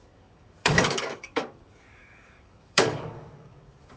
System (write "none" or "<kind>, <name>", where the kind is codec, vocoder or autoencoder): codec, DAC